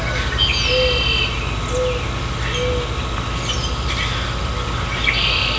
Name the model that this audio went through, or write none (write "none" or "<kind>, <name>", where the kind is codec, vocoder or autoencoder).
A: none